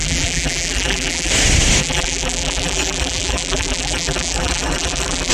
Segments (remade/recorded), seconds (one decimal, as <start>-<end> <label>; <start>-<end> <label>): 0.0-1.3 remade; 1.3-1.8 recorded; 1.8-5.3 remade